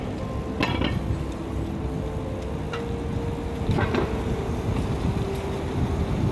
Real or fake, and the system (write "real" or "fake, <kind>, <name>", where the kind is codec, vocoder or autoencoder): real